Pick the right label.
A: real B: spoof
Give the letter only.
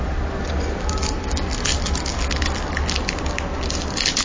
A